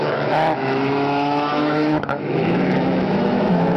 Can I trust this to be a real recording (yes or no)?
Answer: no